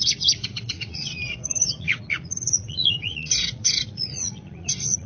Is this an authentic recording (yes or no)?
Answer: no